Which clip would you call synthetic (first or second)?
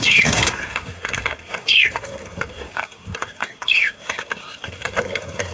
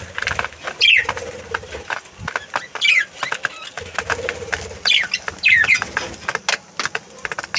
first